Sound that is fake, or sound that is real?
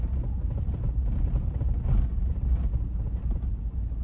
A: real